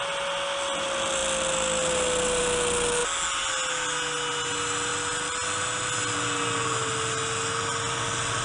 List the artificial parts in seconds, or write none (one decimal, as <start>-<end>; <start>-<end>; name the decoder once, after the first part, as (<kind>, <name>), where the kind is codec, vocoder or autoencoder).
none